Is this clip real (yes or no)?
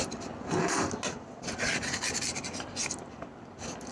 yes